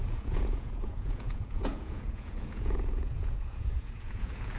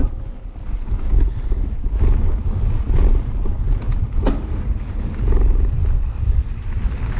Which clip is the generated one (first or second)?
first